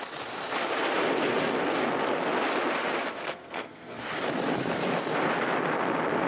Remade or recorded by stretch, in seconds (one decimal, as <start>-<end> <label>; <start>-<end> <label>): 0.0-3.1 recorded; 3.1-4.1 remade; 4.1-6.3 recorded